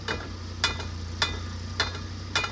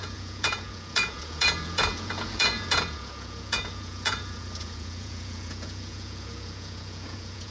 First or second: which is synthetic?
second